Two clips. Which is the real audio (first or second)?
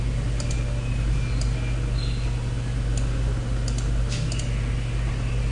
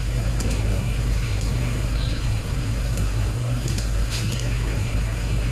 first